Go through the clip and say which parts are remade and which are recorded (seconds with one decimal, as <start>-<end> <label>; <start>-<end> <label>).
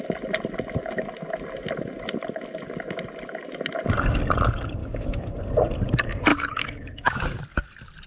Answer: 0.0-4.8 recorded; 4.8-5.3 remade; 5.3-6.3 recorded; 6.3-7.2 remade; 7.2-8.1 recorded